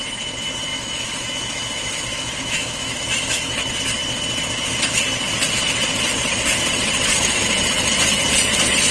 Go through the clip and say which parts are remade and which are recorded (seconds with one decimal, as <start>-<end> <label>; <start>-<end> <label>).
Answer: 0.0-0.7 recorded; 0.7-3.6 remade; 3.6-8.9 recorded